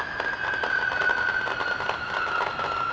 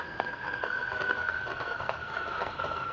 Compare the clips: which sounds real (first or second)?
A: first